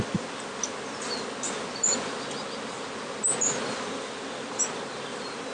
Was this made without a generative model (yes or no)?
yes